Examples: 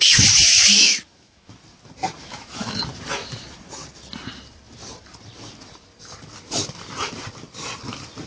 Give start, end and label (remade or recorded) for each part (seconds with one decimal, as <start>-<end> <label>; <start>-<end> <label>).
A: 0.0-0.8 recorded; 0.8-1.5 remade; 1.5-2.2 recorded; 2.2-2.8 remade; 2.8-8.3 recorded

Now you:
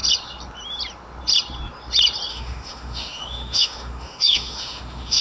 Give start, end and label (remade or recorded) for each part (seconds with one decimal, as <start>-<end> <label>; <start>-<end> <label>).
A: 0.0-2.3 recorded; 2.3-5.2 remade

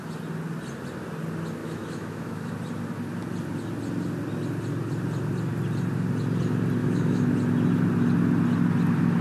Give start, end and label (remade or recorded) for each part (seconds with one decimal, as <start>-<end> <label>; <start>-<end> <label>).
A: 0.0-1.6 recorded; 1.6-2.5 remade; 2.5-6.8 recorded; 6.8-7.3 remade; 7.3-9.2 recorded

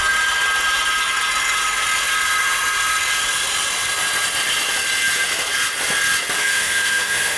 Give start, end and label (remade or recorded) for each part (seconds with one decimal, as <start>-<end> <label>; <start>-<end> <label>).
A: 0.0-6.4 recorded; 6.4-7.4 remade

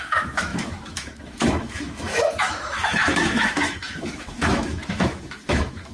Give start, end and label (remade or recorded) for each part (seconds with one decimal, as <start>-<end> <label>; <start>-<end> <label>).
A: 0.0-5.9 remade

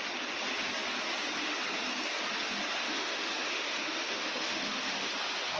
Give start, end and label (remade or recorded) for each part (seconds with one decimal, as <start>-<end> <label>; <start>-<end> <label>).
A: 0.0-2.8 recorded; 2.8-5.1 remade; 5.1-5.6 recorded